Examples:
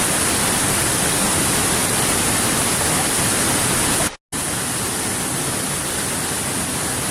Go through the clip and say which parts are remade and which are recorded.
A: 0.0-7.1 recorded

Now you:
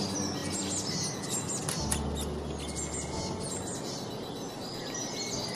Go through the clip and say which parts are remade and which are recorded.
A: 0.0-5.6 recorded

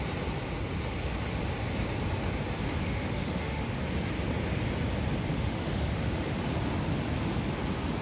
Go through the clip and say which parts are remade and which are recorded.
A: 0.0-2.8 recorded; 2.8-3.8 remade; 3.8-5.3 recorded; 5.3-6.4 remade; 6.4-8.0 recorded

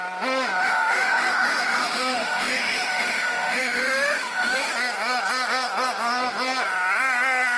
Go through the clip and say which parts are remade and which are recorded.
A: 0.0-0.6 recorded; 0.6-4.7 remade; 4.7-7.6 recorded

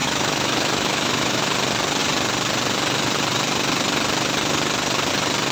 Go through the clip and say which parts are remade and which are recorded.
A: 0.0-1.4 remade; 1.4-5.5 recorded

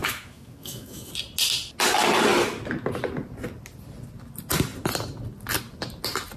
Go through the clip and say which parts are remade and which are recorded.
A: 0.0-1.1 remade; 1.1-6.4 recorded

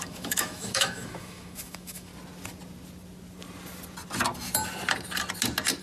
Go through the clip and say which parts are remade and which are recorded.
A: 0.0-2.1 remade; 2.1-5.8 recorded

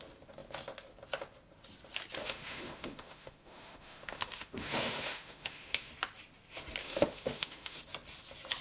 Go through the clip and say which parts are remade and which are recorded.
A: 0.0-2.2 recorded; 2.2-5.9 remade; 5.9-6.8 recorded; 6.8-7.8 remade; 7.8-8.6 recorded